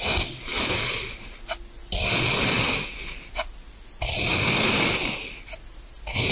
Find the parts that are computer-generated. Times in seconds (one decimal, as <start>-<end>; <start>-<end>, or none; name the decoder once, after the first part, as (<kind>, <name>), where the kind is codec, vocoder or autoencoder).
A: none